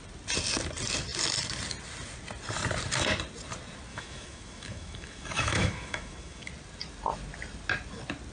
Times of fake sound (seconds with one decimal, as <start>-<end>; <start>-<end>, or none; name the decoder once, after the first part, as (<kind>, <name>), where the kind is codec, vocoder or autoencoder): 3.9-6.5 (autoencoder, DAC-VAE)